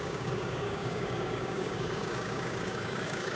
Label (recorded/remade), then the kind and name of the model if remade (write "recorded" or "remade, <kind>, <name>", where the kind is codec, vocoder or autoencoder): remade, codec, DAC